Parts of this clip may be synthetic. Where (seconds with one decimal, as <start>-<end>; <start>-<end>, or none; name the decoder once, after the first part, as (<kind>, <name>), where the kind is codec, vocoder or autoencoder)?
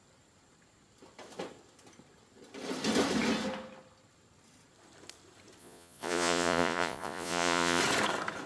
5.6-7.8 (vocoder, Vocos)